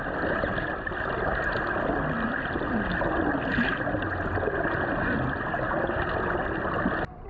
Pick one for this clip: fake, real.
real